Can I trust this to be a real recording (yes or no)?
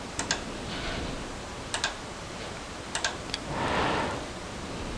yes